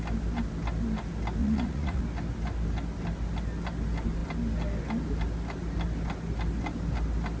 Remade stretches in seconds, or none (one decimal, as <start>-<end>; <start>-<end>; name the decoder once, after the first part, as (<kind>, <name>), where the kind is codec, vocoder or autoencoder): 1.4-2.0 (vocoder, Vocos)